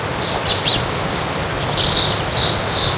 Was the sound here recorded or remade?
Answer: recorded